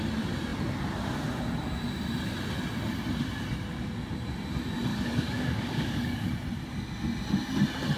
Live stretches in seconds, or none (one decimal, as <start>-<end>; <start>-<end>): 0.0-4.9; 6.3-8.0